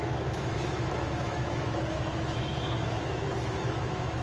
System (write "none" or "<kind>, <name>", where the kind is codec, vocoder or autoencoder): autoencoder, DAC-VAE